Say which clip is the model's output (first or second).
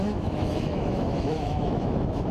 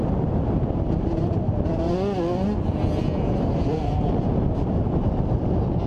first